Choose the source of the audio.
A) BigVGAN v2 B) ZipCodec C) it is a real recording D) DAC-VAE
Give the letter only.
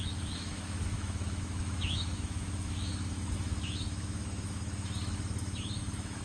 D